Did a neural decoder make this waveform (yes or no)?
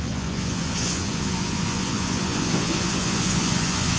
yes